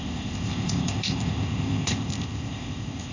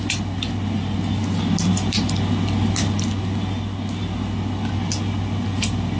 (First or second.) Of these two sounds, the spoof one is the first